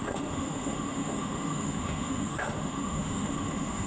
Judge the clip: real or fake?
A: fake